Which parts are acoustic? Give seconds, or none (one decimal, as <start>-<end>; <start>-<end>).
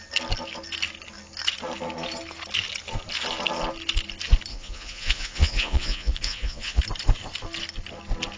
0.0-4.5; 6.8-8.4